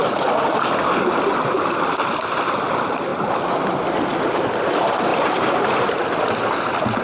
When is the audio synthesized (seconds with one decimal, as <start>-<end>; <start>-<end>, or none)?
none